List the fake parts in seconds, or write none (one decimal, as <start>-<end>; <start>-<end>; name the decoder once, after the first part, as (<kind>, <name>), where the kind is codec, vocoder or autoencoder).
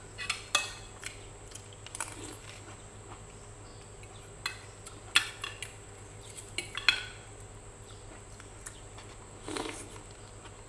none